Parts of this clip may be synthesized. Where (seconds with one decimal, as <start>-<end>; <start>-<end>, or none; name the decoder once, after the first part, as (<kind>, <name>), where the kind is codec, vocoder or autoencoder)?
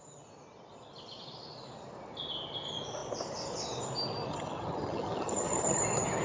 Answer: 4.3-5.8 (vocoder, HiFi-GAN)